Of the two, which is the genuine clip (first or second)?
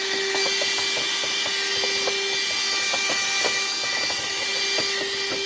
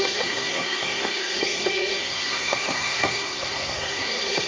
first